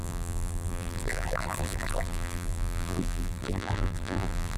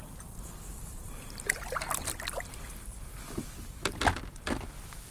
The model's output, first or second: first